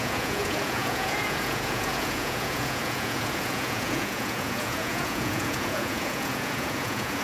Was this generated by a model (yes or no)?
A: yes